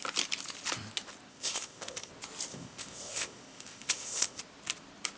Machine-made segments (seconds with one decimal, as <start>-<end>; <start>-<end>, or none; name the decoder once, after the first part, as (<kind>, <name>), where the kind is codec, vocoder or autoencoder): 1.3-2.1 (codec, ZipCodec); 2.5-4.4